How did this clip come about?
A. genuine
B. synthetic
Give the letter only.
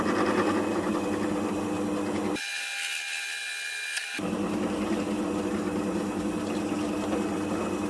A